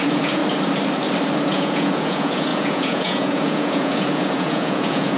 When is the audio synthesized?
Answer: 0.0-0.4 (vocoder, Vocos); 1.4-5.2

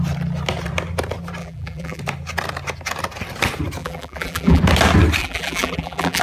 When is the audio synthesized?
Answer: 1.4-2.0 (vocoder, BigVGAN v2); 3.8-4.6; 5.2-6.2